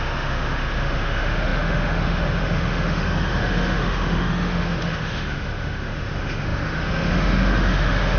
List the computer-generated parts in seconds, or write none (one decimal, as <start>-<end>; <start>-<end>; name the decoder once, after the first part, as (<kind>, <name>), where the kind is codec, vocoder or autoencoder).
0.0-8.2 (autoencoder, DAC-VAE)